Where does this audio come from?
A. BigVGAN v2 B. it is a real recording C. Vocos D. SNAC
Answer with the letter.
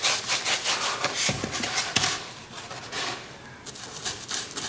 B